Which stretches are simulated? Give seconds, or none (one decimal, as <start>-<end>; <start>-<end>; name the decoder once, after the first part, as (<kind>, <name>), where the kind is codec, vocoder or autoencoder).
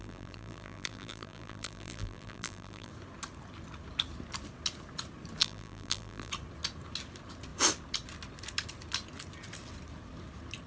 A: 0.0-2.9 (vocoder, BigVGAN v2); 5.4-6.3